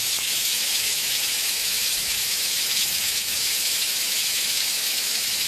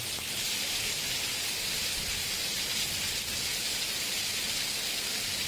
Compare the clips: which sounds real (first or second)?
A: second